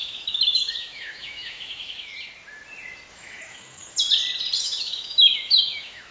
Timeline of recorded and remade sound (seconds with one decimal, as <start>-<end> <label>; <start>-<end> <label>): 0.0-2.1 remade; 2.1-3.1 recorded; 3.1-3.9 remade; 3.9-4.6 recorded; 4.6-6.1 remade